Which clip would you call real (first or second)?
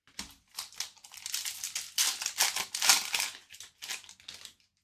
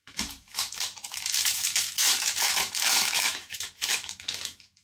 first